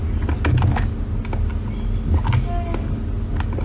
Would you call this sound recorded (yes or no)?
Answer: yes